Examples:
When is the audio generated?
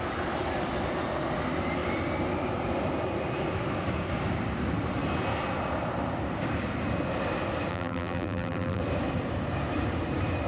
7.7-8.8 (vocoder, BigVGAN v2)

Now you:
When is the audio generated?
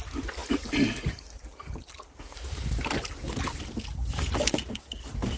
none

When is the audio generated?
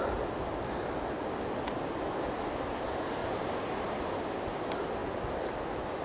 3.2-4.2 (vocoder, BigVGAN v2)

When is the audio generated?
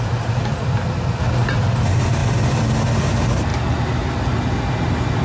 0.0-0.5 (vocoder, BigVGAN v2); 1.8-2.2; 3.0-3.5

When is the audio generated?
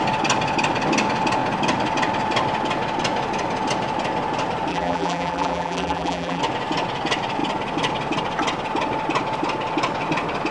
4.7-6.4 (vocoder, BigVGAN v2)